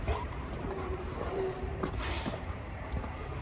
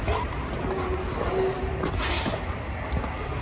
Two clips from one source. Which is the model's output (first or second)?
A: first